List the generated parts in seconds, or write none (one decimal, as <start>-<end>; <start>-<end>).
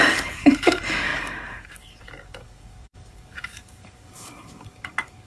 0.0-5.3